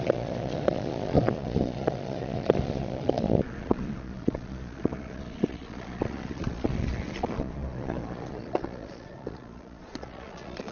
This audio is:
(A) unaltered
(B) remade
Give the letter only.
B